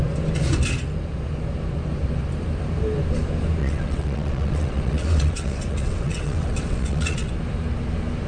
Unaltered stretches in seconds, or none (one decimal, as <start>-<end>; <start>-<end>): 0.0-3.6; 7.3-8.3